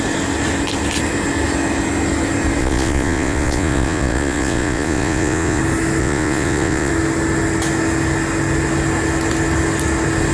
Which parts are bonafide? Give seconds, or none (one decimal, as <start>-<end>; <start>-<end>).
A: 0.0-2.6; 5.6-6.0; 6.9-10.3